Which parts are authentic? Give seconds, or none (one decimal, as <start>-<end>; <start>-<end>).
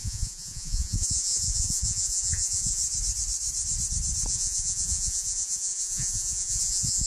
2.8-4.3